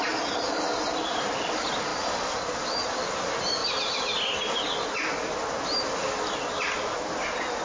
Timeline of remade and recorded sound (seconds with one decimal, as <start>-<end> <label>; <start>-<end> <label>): 0.0-7.6 recorded